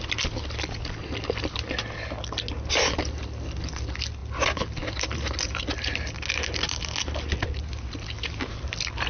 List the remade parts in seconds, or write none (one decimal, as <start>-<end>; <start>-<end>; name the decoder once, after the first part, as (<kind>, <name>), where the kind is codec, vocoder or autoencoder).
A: none